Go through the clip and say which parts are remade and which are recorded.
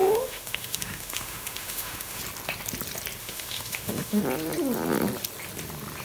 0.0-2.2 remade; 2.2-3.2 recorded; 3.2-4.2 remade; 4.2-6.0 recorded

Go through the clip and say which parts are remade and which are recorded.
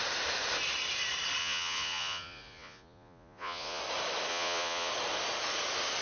0.0-1.4 recorded; 1.4-3.8 remade; 3.8-4.3 recorded; 4.3-4.9 remade; 4.9-6.0 recorded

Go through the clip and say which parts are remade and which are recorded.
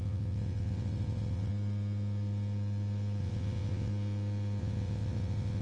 0.0-1.5 remade; 1.5-3.2 recorded; 3.2-3.9 remade; 3.9-4.6 recorded; 4.6-5.6 remade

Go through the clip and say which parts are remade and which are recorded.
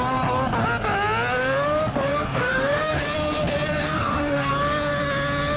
0.0-2.1 recorded; 2.1-3.0 remade; 3.0-3.8 recorded; 3.8-4.5 remade; 4.5-5.6 recorded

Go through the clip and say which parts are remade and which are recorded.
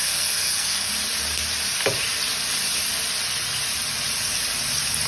0.0-0.9 remade; 0.9-5.1 recorded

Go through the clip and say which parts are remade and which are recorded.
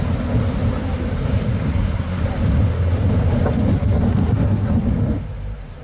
0.0-1.7 recorded; 1.7-2.2 remade; 2.2-3.7 recorded; 3.7-4.9 remade; 4.9-5.8 recorded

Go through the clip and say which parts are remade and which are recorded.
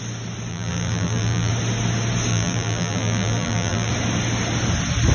0.0-0.5 recorded; 0.5-1.5 remade; 1.5-2.3 recorded; 2.3-3.9 remade; 3.9-5.1 recorded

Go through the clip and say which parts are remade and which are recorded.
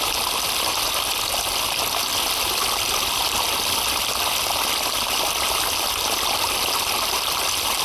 0.0-7.8 recorded